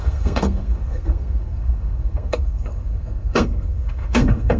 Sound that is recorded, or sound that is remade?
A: remade